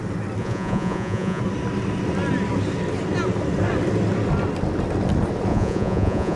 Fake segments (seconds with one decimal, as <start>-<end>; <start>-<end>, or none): 0.4-1.4; 5.5-6.4